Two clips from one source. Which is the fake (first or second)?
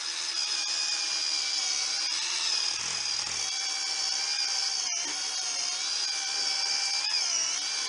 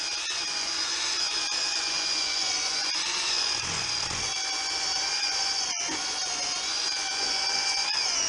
second